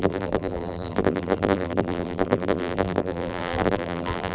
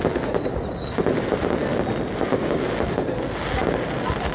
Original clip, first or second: second